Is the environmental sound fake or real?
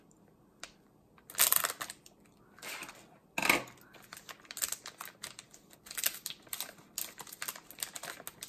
real